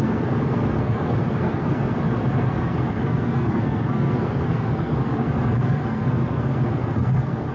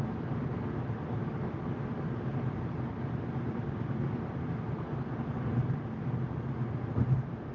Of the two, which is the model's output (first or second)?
first